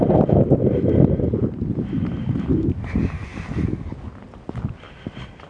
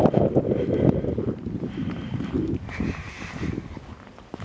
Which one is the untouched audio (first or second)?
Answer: first